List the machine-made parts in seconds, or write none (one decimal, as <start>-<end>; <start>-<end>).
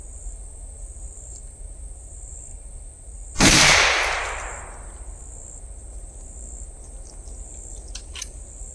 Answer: none